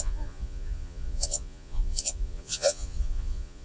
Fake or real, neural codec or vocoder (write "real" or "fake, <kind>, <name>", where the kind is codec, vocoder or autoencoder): fake, vocoder, Vocos